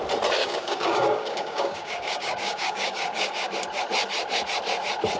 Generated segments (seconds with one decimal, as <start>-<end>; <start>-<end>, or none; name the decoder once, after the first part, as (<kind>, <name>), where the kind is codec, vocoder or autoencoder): 0.4-3.5 (codec, DAC)